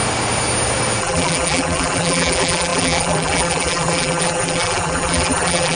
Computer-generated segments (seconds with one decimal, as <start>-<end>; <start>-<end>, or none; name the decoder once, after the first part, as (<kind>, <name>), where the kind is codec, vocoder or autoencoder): 1.0-5.8 (vocoder, BigVGAN v2)